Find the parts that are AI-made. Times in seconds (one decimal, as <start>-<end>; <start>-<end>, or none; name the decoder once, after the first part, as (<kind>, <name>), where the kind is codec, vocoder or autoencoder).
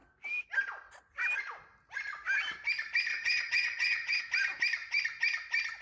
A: 3.1-4.2 (vocoder, HiFi-GAN)